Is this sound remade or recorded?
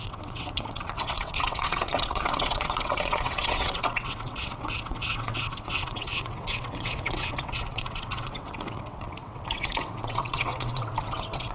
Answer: remade